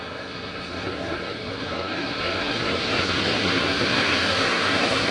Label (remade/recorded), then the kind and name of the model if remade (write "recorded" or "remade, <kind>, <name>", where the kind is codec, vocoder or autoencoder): remade, codec, SNAC